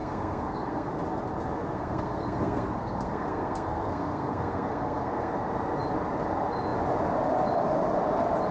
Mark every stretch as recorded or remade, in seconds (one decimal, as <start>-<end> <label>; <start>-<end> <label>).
0.0-0.9 remade; 0.9-1.7 recorded; 1.7-5.3 remade; 5.3-8.5 recorded

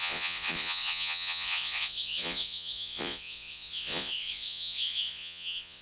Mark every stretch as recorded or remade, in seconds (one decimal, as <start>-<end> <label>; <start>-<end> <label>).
0.0-5.8 remade